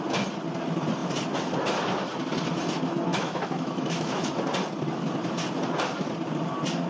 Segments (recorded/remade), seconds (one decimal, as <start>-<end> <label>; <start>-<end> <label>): 0.0-3.1 recorded; 3.1-4.3 remade; 4.3-6.9 recorded